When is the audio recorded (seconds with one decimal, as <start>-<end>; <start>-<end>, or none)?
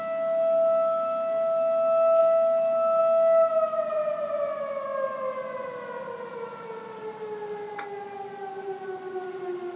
0.0-9.8